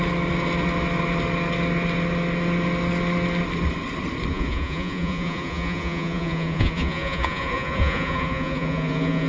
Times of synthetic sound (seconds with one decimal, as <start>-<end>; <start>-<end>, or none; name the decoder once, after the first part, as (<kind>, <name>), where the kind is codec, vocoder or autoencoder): 4.3-9.3 (vocoder, Vocos)